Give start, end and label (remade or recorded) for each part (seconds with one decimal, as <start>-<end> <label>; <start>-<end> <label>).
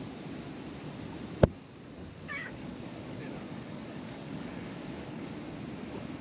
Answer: 0.0-2.3 recorded; 2.3-5.3 remade; 5.3-6.2 recorded